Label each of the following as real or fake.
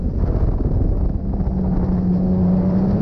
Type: real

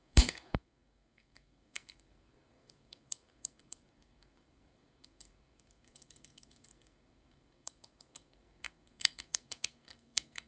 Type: fake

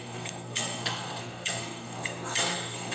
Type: fake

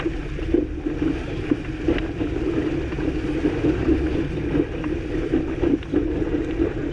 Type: real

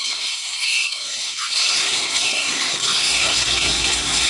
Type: fake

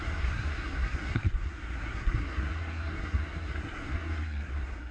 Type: fake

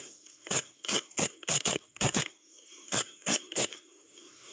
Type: fake